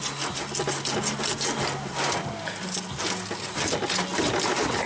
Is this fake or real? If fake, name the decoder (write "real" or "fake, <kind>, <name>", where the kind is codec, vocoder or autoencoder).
real